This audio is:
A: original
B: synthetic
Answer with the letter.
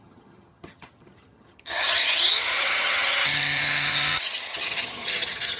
B